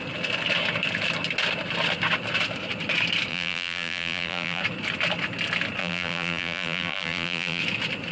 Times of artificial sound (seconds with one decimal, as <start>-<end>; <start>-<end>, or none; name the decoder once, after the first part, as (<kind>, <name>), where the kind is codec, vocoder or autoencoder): 3.3-4.6 (vocoder, BigVGAN v2); 5.8-7.6